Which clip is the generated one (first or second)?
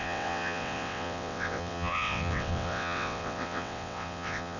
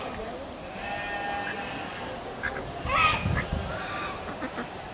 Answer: first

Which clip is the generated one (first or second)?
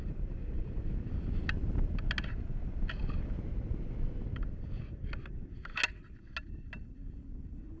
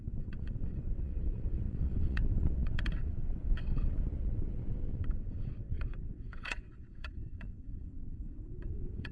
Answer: second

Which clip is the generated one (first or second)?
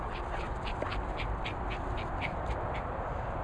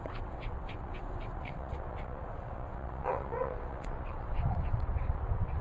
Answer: second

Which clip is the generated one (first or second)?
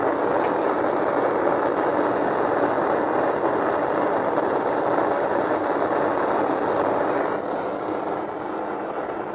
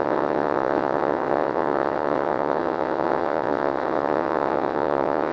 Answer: second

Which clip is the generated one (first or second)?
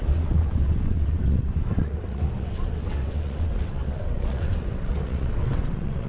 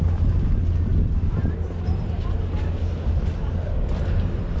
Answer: first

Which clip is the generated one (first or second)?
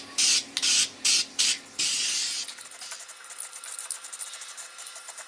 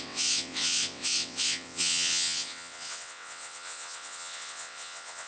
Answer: second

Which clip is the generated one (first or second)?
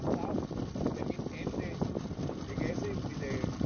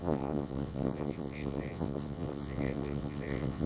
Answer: second